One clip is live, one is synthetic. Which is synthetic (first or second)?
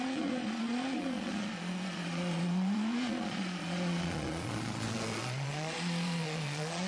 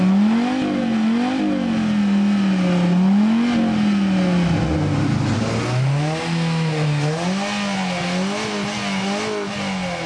first